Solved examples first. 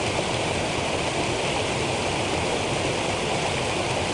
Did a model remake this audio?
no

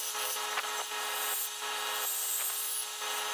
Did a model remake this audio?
no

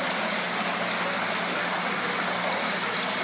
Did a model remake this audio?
no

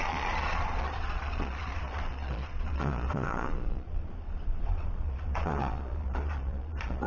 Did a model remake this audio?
yes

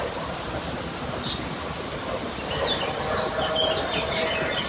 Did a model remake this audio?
no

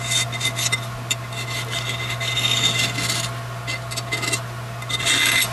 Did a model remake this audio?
no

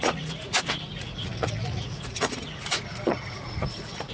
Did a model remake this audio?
yes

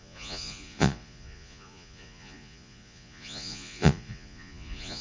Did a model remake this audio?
yes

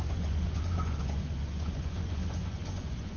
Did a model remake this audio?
yes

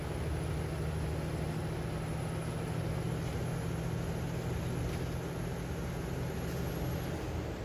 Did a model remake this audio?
no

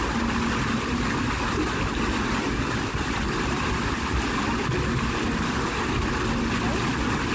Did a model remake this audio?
no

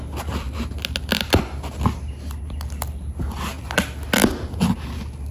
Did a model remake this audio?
no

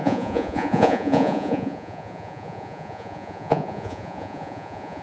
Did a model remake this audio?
yes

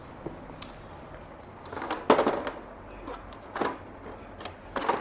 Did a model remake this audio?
no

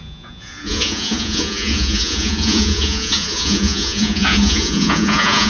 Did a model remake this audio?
yes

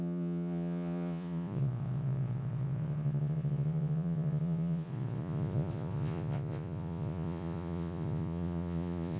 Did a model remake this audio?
yes